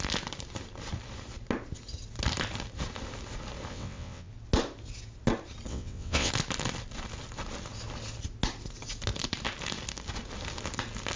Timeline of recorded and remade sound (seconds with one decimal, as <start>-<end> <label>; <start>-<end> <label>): 0.0-3.7 recorded; 3.7-4.3 remade; 4.3-5.7 recorded; 5.7-6.3 remade; 6.3-11.2 recorded